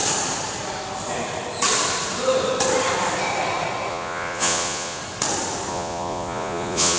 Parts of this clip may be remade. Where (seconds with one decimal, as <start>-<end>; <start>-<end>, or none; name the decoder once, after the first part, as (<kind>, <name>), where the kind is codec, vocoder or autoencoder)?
3.9-5.0 (vocoder, Vocos); 5.7-7.0